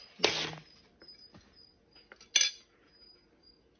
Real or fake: real